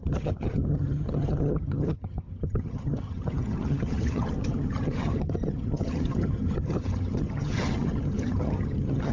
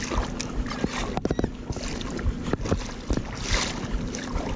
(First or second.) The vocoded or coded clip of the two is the first